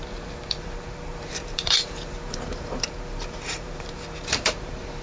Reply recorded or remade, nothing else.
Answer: remade